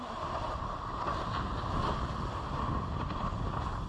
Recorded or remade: recorded